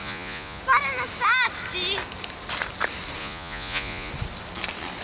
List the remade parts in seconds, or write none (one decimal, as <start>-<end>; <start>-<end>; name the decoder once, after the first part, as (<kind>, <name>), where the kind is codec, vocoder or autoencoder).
0.0-0.6 (vocoder, Vocos); 3.2-4.1